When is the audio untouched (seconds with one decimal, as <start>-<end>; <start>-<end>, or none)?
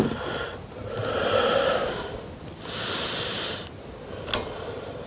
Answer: 0.0-5.1